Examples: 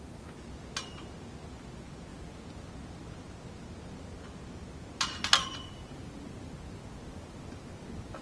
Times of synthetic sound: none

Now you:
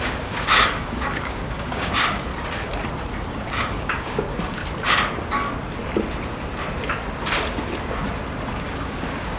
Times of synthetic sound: 0.0-2.3 (codec, DAC); 3.3-4.6; 8.5-9.4

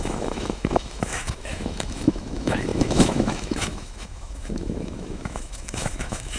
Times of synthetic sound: 0.0-6.4 (autoencoder, DAC-VAE)

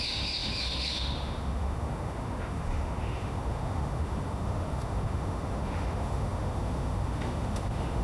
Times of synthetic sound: 0.0-8.0 (autoencoder, DAC-VAE)

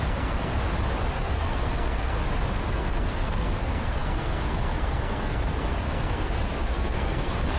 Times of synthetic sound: 0.0-0.5 (codec, SNAC); 1.1-2.2; 2.7-7.6

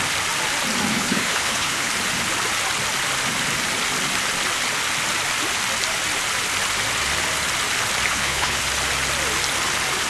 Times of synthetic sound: 0.9-1.9 (codec, HILCodec); 8.1-8.6

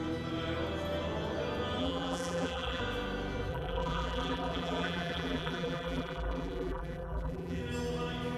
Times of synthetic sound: 1.8-2.8 (vocoder, BigVGAN v2); 3.5-7.6

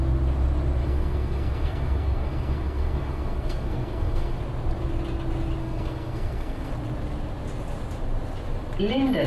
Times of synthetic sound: 0.8-4.4 (codec, SNAC); 5.6-6.7